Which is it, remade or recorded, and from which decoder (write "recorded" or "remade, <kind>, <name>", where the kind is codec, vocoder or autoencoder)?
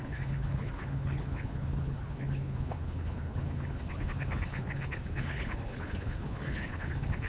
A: remade, codec, HILCodec